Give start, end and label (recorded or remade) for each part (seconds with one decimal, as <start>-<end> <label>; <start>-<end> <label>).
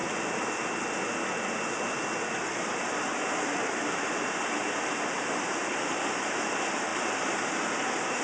0.0-2.3 recorded; 2.3-8.2 remade